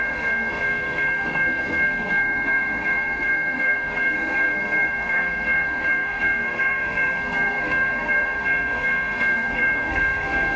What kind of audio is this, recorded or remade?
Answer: remade